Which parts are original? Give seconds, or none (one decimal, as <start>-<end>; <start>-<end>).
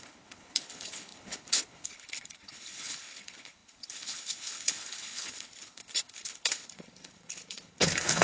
none